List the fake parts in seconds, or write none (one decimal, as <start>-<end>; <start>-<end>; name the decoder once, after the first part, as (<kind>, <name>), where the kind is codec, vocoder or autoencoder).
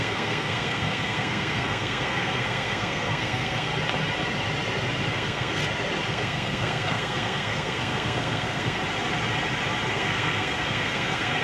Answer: 0.0-3.7 (codec, SNAC); 5.1-5.6; 6.1-8.8; 9.9-11.4